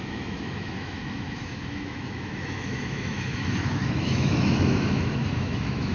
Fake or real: fake